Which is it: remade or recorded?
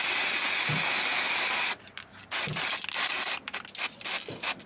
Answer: recorded